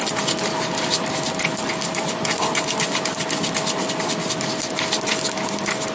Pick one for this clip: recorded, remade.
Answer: recorded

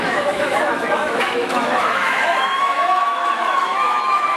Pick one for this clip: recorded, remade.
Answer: remade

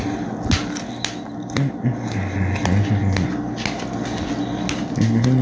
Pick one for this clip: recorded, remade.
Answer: recorded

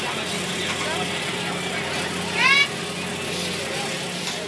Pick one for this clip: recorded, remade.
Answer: recorded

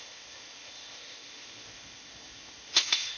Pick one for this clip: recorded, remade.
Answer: remade